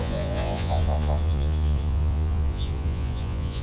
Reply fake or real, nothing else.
fake